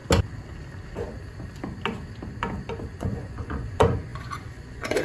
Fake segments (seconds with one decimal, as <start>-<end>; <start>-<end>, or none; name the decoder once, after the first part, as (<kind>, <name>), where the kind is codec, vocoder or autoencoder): 3.0-5.0 (vocoder, Vocos)